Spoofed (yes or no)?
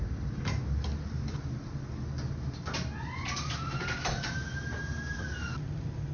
no